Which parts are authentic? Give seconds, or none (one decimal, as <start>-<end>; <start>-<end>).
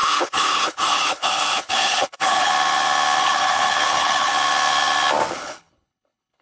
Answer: 2.5-3.2; 4.3-5.3